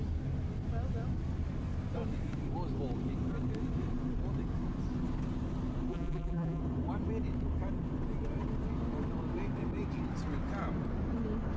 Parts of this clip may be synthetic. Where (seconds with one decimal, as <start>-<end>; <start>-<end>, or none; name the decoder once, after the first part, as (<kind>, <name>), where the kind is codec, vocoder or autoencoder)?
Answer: 5.9-6.6 (vocoder, BigVGAN v2)